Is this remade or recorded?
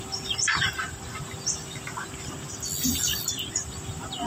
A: recorded